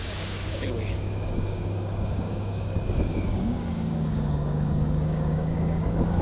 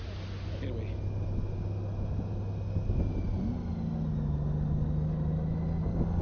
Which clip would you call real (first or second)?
second